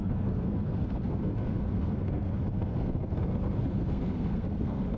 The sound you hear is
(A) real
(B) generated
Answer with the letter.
B